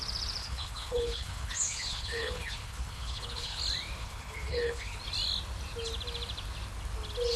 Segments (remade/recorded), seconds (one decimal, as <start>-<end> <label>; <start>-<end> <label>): 0.0-0.4 recorded; 0.4-3.6 remade; 3.6-4.0 recorded; 4.0-5.0 remade; 5.0-7.4 recorded